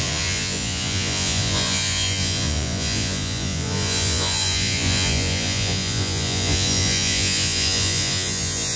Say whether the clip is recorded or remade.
remade